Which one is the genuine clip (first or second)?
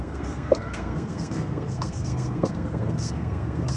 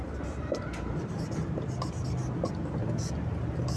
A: second